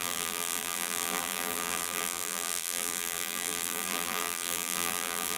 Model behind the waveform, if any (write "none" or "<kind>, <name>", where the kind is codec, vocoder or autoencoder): vocoder, BigVGAN v2